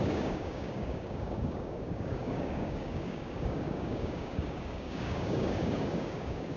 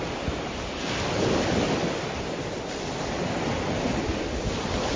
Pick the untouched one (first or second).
second